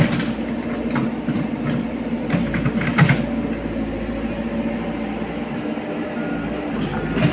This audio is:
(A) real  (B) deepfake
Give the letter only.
A